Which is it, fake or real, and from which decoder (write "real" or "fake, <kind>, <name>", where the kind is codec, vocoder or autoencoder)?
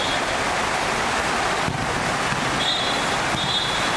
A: real